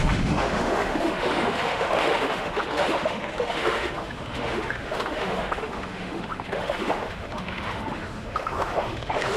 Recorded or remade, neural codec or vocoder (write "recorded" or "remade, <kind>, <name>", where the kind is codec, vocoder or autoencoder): remade, autoencoder, DAC-VAE